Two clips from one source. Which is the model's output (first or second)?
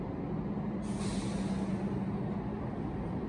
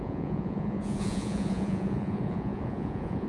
second